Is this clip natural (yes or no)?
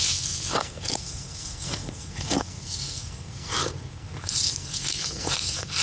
no